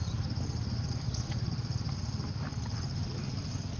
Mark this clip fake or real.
real